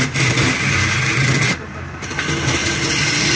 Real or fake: real